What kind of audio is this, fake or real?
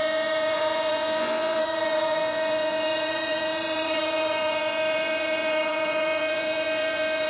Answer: fake